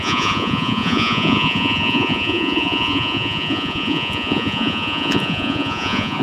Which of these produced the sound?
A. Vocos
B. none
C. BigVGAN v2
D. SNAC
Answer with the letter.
A